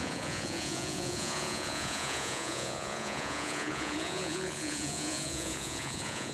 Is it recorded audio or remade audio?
remade